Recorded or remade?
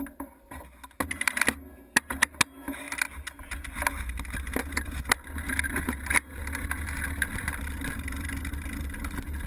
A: recorded